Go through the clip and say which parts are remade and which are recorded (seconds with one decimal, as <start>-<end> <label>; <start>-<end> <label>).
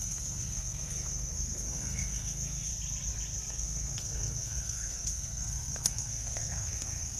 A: 0.0-2.7 remade; 2.7-3.5 recorded; 3.5-7.2 remade